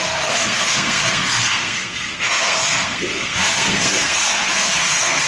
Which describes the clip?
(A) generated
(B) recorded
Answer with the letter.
A